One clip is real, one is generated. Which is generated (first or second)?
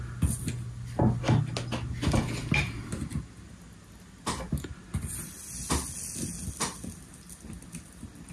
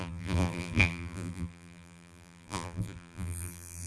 second